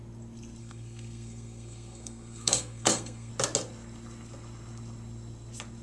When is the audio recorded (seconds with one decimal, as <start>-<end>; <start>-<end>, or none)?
0.0-0.6; 3.3-5.8